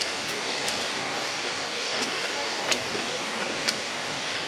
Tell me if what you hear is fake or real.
fake